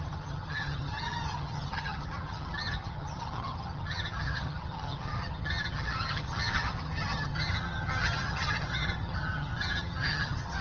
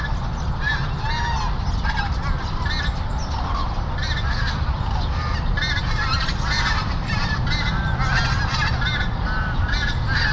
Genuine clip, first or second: second